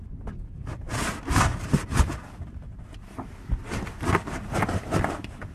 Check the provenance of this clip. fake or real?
real